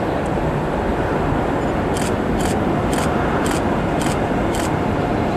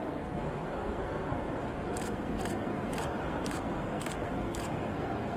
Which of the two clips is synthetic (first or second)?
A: second